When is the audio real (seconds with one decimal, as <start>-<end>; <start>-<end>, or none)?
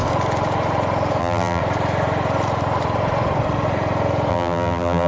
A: 0.0-1.2; 1.6-4.3